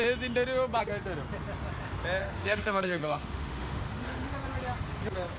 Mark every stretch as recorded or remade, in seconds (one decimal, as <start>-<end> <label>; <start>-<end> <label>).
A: 0.0-2.2 recorded; 2.2-4.3 remade; 4.3-5.4 recorded